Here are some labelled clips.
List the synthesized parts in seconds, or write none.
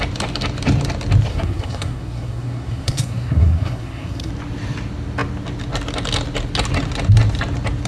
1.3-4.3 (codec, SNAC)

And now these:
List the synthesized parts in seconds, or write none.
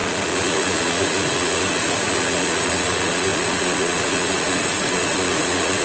0.0-5.8 (vocoder, Vocos)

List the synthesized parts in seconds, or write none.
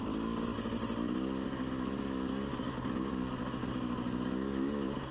none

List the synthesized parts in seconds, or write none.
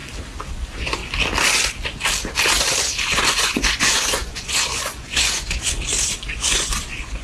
0.5-1.0 (vocoder, Vocos); 2.8-7.2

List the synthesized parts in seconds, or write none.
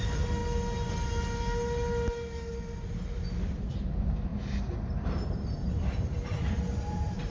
0.0-0.4 (vocoder, BigVGAN v2); 3.5-7.3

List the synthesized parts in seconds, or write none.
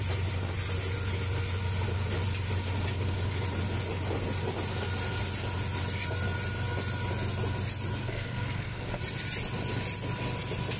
8.0-9.0 (codec, SNAC)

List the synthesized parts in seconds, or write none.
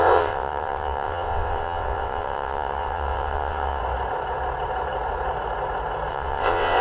0.0-3.8 (vocoder, WaveNeXt); 6.1-6.8